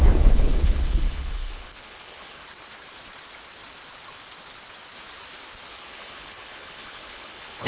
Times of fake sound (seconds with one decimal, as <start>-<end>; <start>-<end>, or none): 0.0-2.4; 5.7-7.7